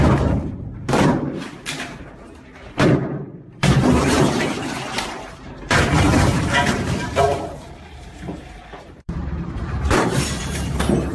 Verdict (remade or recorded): remade